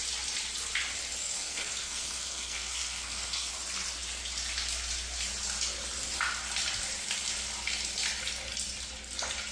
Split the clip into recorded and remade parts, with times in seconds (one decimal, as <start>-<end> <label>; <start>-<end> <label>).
0.0-1.2 recorded; 1.2-3.5 remade; 3.5-9.5 recorded